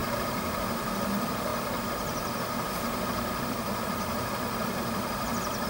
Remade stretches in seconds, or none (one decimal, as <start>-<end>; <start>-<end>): 0.6-1.5; 3.6-5.7

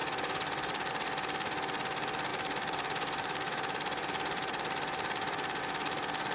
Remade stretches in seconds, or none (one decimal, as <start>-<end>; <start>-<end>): 0.0-0.9; 2.3-5.6